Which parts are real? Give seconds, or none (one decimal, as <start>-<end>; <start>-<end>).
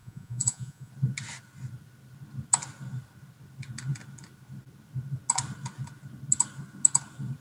0.9-7.4